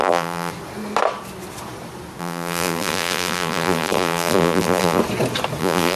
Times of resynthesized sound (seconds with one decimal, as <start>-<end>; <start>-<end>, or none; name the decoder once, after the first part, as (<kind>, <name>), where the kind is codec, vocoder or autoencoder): 0.0-0.5 (vocoder, BigVGAN v2); 2.2-5.0; 5.6-6.0